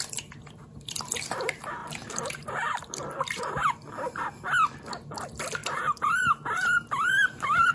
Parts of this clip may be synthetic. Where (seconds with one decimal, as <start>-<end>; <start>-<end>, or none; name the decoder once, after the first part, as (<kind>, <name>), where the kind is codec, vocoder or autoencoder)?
1.8-3.7 (vocoder, BigVGAN v2); 5.6-7.7